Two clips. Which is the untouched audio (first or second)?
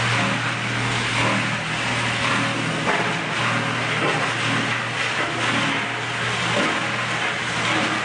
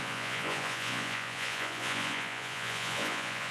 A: first